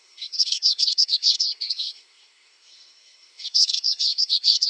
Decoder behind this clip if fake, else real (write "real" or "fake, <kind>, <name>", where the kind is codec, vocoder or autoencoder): fake, codec, SNAC